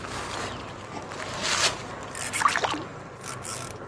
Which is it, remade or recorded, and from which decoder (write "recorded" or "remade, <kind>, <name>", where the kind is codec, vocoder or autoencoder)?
recorded